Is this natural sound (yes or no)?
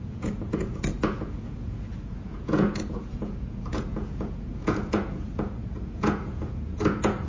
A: no